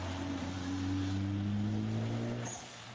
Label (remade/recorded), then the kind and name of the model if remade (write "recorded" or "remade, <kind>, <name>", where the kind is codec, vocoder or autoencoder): recorded